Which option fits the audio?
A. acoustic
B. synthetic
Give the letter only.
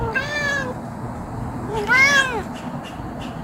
A